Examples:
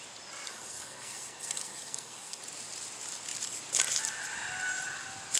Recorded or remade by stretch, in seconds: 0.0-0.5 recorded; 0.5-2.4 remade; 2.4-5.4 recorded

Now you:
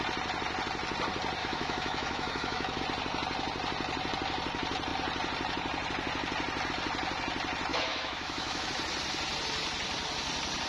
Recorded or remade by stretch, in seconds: 0.0-1.4 recorded; 1.4-2.8 remade; 2.8-7.7 recorded; 7.7-8.7 remade; 8.7-10.7 recorded

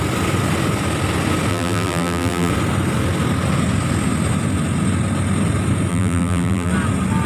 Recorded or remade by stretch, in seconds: 0.0-1.5 recorded; 1.5-2.5 remade; 2.5-5.9 recorded; 5.9-6.7 remade; 6.7-7.3 recorded

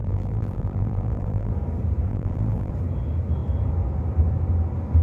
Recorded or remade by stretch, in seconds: 0.0-1.5 remade; 1.5-2.1 recorded; 2.1-2.7 remade; 2.7-5.0 recorded

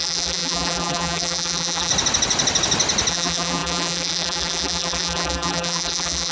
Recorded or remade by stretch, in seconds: 0.0-1.9 remade; 1.9-3.1 recorded; 3.1-6.3 remade

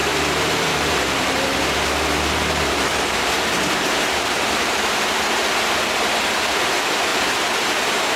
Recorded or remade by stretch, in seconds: 0.0-4.8 remade; 4.8-7.1 recorded; 7.1-8.2 remade